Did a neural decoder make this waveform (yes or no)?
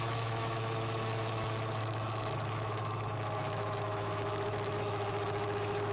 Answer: yes